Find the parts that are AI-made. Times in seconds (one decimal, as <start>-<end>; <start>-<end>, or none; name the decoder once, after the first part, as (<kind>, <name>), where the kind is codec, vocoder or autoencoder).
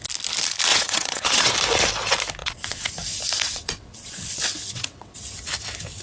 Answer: 0.7-1.5 (vocoder, WaveNeXt); 2.4-2.9; 3.4-5.1